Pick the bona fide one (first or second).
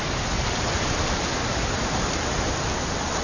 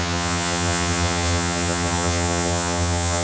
first